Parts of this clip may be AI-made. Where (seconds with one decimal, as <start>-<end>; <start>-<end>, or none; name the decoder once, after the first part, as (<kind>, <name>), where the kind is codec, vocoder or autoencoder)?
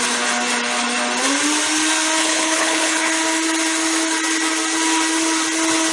2.2-3.1 (codec, HILCodec)